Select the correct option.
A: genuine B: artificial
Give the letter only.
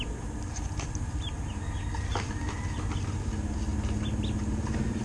A